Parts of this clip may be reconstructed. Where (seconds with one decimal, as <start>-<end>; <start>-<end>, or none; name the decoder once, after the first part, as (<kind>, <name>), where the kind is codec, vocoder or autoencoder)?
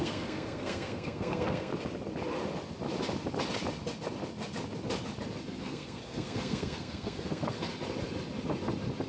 0.0-1.7 (codec, SNAC); 5.6-7.7